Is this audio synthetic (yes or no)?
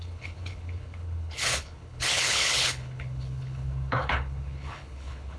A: yes